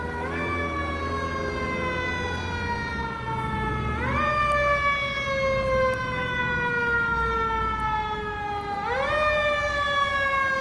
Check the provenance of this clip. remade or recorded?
recorded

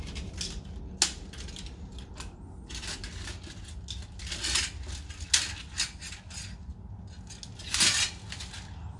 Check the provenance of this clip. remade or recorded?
recorded